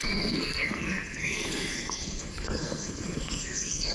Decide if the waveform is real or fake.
fake